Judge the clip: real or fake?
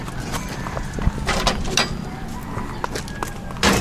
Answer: real